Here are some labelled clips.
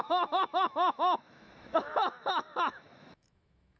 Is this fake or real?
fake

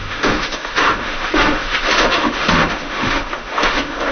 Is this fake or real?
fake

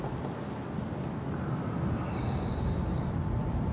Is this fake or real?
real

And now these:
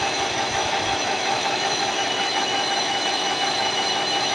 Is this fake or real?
fake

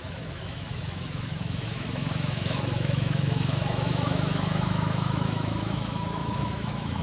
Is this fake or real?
fake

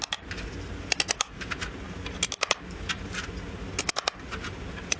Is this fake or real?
real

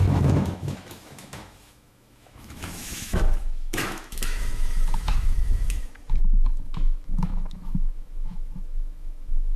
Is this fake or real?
fake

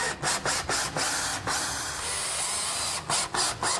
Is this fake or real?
real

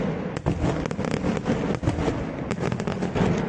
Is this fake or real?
real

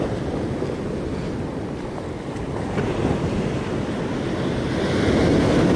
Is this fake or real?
real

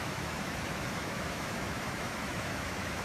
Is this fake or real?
fake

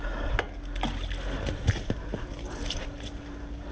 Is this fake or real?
real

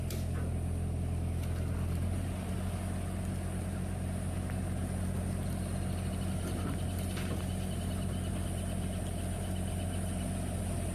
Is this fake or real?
real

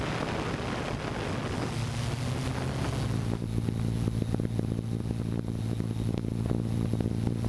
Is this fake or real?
real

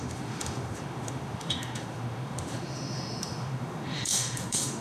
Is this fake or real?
fake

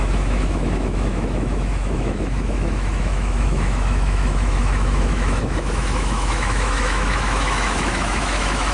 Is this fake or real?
fake